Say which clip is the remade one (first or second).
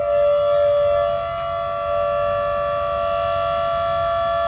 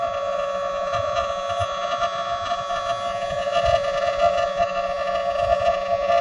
second